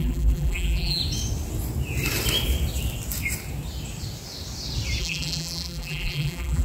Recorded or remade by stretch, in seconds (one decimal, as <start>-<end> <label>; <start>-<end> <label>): 0.0-1.0 remade; 1.0-5.0 recorded; 5.0-6.6 remade